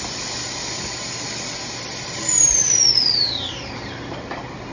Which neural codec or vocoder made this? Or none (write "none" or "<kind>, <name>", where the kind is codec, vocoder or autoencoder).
none